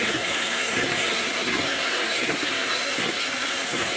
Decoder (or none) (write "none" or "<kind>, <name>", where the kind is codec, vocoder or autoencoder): codec, SNAC